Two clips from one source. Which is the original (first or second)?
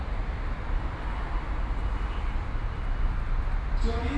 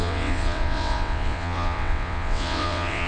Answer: first